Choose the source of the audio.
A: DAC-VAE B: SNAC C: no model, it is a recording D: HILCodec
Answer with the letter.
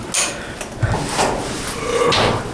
C